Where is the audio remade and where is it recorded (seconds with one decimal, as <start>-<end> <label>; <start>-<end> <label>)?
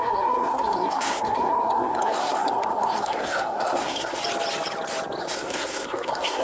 0.0-4.2 remade; 4.2-5.2 recorded; 5.2-6.4 remade